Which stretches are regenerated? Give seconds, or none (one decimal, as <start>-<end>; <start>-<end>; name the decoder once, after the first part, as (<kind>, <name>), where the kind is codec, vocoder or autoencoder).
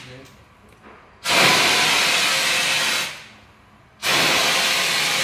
none